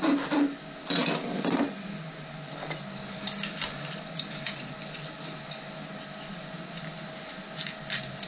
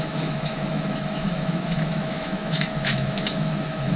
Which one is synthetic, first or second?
second